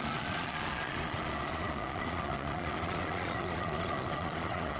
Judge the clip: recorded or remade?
remade